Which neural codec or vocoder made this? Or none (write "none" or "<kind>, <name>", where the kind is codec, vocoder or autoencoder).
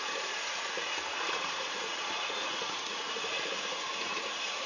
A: vocoder, Vocos